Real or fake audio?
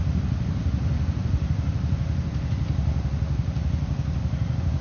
fake